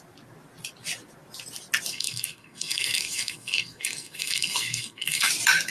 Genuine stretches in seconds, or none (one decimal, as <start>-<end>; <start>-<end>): 0.0-1.9; 5.3-5.7